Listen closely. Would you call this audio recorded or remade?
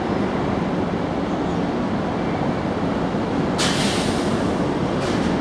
recorded